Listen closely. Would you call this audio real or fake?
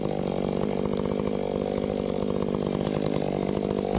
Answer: real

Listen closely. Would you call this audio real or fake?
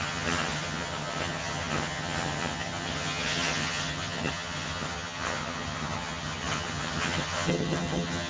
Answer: fake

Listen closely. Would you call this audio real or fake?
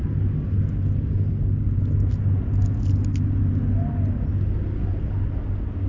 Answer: real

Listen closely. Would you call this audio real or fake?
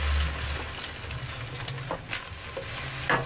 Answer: real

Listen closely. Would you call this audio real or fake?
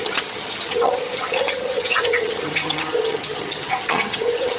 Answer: fake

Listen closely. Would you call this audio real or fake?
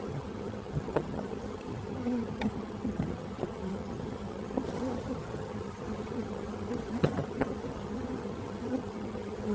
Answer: fake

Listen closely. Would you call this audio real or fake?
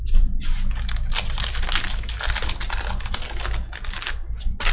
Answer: real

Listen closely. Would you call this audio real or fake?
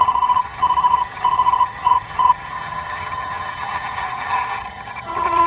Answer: fake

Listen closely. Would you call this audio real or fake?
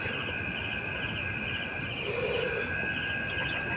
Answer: real